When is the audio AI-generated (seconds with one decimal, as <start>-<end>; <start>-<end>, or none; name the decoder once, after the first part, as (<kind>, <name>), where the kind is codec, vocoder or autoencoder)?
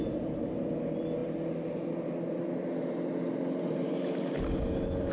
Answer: none